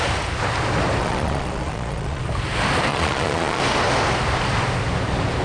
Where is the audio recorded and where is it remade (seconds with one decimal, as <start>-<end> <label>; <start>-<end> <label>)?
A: 0.0-1.0 recorded; 1.0-2.2 remade; 2.2-2.9 recorded; 2.9-3.6 remade; 3.6-5.4 recorded